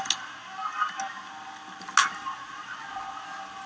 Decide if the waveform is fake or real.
real